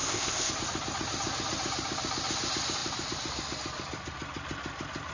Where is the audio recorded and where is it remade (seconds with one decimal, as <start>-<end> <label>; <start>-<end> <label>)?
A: 0.0-0.5 remade; 0.5-5.1 recorded